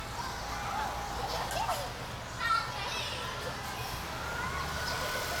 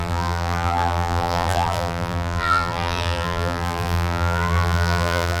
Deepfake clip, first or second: second